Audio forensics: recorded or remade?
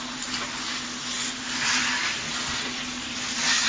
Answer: recorded